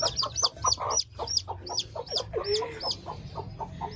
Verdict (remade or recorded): recorded